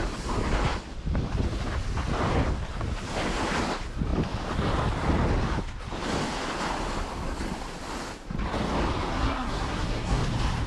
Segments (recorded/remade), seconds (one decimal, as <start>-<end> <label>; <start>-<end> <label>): 0.0-9.1 recorded; 9.1-10.2 remade; 10.2-10.7 recorded